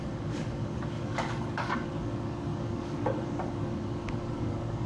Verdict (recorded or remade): remade